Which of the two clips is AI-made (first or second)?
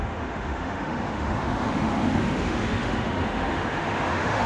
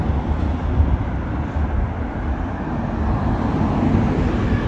first